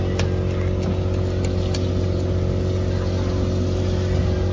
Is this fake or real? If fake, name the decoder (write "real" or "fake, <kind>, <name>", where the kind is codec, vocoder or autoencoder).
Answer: real